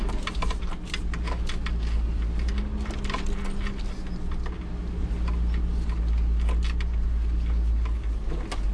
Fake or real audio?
real